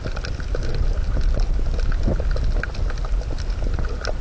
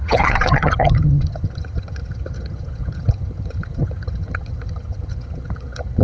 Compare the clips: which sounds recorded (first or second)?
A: first